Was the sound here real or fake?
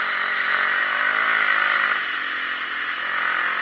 real